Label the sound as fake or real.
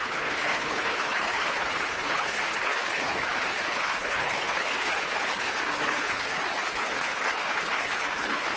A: fake